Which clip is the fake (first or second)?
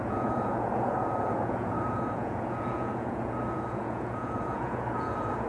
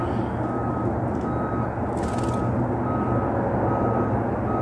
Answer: first